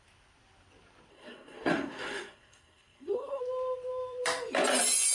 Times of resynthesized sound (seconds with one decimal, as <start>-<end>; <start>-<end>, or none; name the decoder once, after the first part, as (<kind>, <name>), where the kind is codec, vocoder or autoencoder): 1.1-3.4 (codec, SNAC)